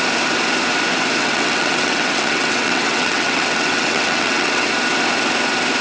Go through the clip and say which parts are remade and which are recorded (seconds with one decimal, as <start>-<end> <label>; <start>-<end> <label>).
0.0-1.2 recorded; 1.2-4.7 remade; 4.7-5.8 recorded